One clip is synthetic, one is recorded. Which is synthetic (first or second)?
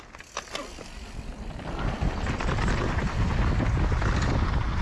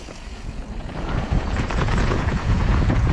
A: second